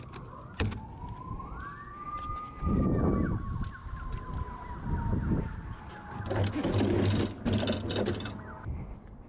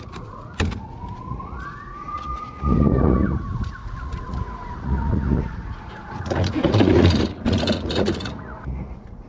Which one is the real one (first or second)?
first